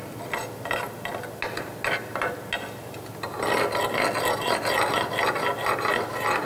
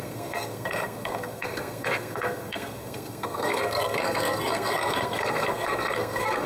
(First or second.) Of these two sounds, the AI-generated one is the second